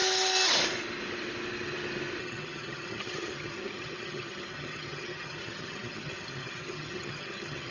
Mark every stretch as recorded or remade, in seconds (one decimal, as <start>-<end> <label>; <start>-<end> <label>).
0.0-2.2 recorded; 2.2-7.7 remade